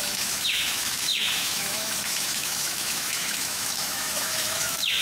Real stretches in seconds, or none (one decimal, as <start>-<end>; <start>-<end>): none